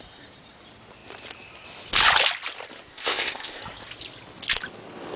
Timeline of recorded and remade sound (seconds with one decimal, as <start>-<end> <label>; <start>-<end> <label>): 0.0-2.9 recorded; 2.9-3.6 remade; 3.6-5.2 recorded